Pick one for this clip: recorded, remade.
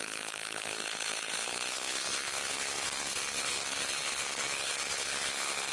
remade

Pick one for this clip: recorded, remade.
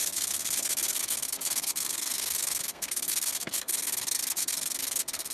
remade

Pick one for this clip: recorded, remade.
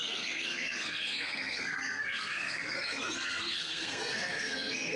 remade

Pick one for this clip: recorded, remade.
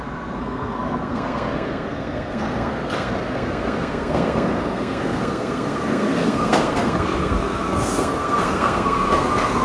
remade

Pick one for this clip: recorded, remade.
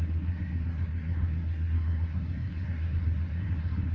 remade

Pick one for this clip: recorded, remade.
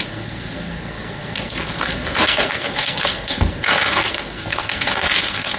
remade